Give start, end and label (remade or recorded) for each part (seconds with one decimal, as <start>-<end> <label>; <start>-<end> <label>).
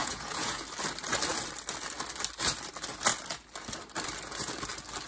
0.0-0.6 remade; 0.6-5.1 recorded